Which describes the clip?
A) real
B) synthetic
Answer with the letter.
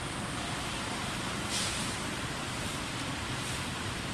B